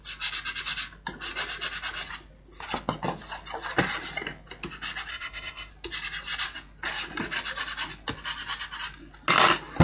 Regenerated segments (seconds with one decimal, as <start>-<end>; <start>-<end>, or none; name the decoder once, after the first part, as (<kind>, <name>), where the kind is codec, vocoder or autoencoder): 5.1-5.7 (codec, SNAC)